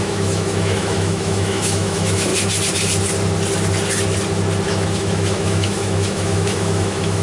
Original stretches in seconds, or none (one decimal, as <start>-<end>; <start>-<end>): 2.3-4.7